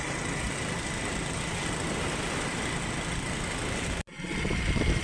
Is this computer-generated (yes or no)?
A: no